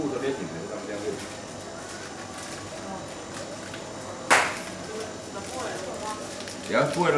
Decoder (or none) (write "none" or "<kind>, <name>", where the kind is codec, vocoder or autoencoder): none